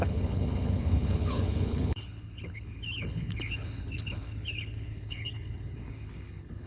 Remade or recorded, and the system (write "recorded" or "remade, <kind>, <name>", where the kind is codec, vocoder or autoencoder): remade, codec, HILCodec